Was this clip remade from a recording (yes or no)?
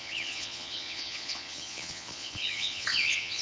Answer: yes